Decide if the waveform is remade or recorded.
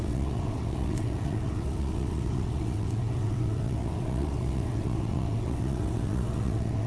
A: remade